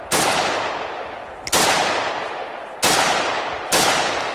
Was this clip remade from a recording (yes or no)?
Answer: no